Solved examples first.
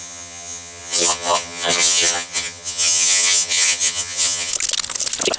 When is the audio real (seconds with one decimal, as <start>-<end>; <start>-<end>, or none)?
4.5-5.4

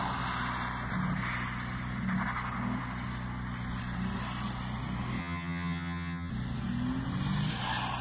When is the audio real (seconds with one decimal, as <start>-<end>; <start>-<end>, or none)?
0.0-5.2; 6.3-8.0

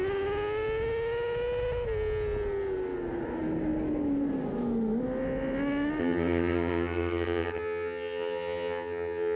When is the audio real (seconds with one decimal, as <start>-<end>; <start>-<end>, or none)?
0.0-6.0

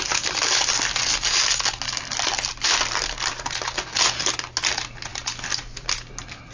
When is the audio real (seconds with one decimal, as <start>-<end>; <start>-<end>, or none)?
0.0-6.5

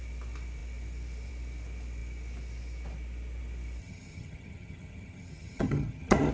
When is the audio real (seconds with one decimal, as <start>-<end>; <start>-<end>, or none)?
0.0-3.8